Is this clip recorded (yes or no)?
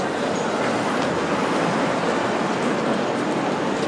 yes